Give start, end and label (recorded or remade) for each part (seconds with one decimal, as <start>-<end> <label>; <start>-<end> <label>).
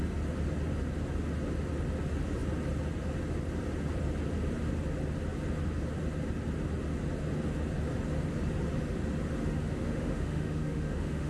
0.0-9.4 recorded; 9.4-11.3 remade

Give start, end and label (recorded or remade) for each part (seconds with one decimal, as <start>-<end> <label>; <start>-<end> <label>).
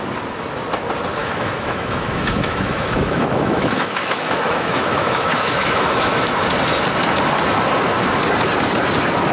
0.0-1.2 recorded; 1.2-6.1 remade; 6.1-9.3 recorded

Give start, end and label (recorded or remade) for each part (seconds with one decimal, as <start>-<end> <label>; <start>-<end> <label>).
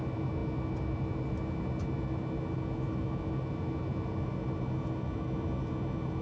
0.0-6.2 recorded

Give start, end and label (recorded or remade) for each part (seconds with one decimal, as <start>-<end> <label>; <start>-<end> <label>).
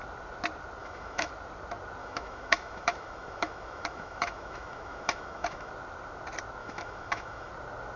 0.0-0.8 recorded; 0.8-1.3 remade; 1.3-2.0 recorded; 2.0-5.7 remade; 5.7-6.6 recorded; 6.6-7.5 remade; 7.5-8.0 recorded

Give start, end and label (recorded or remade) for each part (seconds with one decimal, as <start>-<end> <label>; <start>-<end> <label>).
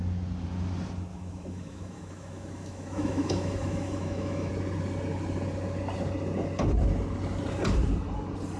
0.0-1.1 recorded; 1.1-4.5 remade; 4.5-8.6 recorded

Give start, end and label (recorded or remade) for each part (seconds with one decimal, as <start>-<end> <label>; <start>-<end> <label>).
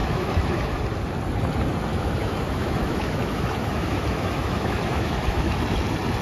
0.0-0.8 remade; 0.8-1.9 recorded; 1.9-5.6 remade; 5.6-6.2 recorded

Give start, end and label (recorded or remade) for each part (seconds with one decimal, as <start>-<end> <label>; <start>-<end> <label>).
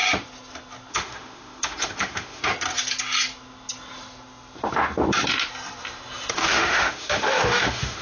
0.0-0.9 recorded; 0.9-2.5 remade; 2.5-6.3 recorded; 6.3-8.0 remade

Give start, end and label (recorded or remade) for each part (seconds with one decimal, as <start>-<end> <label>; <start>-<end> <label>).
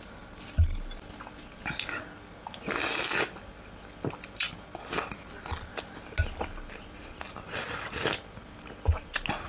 0.0-9.5 recorded